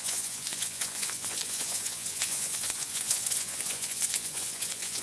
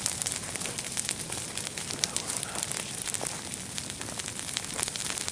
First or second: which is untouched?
second